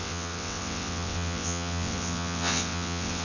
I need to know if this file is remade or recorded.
remade